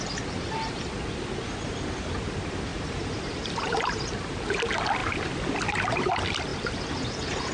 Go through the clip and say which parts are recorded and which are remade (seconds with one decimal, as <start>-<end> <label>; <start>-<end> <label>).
0.0-2.7 recorded; 2.7-4.0 remade; 4.0-5.0 recorded; 5.0-6.1 remade; 6.1-6.5 recorded; 6.5-7.5 remade